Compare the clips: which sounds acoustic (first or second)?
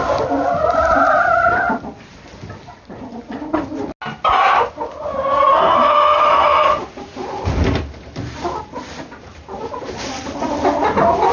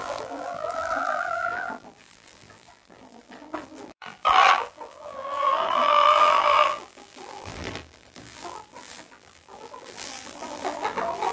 first